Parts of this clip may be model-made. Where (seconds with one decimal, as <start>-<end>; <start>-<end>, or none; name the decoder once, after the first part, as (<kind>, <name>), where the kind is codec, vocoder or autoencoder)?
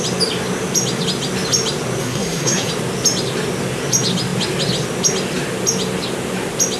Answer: 2.0-2.7 (codec, SNAC)